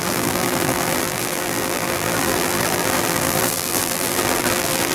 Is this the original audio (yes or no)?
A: no